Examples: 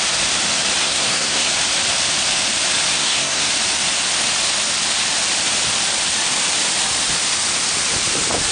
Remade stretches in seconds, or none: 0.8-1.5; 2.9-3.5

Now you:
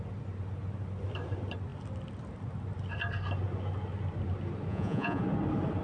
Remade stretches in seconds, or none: 4.7-5.2

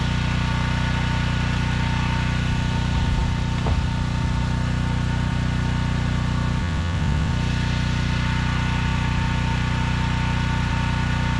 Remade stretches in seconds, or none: 6.6-7.3